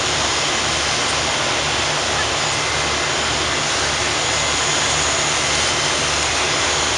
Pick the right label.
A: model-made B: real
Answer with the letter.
B